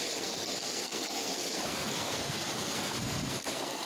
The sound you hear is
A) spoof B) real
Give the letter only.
A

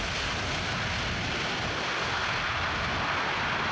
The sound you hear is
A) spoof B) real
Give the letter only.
B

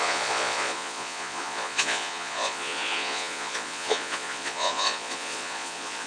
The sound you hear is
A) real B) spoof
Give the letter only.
B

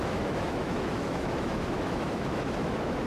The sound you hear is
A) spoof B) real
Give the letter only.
A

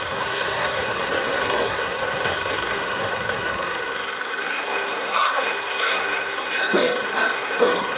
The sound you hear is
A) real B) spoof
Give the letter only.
B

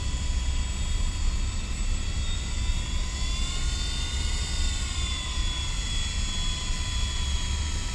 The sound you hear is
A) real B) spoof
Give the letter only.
A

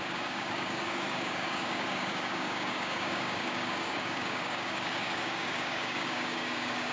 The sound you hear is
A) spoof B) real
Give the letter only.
A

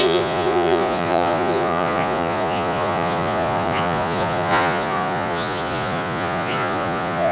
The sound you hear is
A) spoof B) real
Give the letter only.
A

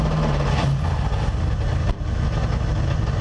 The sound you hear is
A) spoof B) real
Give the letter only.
B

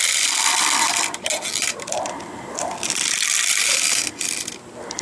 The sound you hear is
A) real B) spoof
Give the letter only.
A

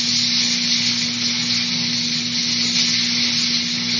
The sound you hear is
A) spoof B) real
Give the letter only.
B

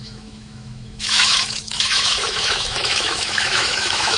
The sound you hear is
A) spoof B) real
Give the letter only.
A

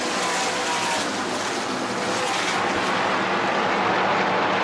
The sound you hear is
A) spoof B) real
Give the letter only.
B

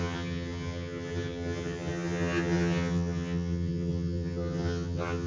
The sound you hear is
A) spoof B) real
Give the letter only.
A